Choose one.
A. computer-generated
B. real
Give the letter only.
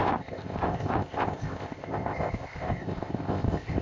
A